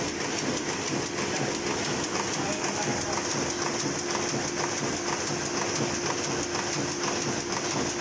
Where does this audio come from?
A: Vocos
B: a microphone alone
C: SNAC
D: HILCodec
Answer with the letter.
B